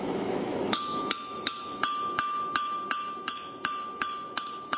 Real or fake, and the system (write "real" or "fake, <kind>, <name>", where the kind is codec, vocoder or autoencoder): fake, autoencoder, DAC-VAE